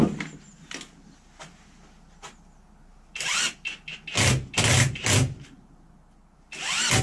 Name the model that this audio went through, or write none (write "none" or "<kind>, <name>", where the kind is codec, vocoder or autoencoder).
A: none